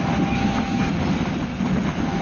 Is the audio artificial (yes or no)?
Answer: no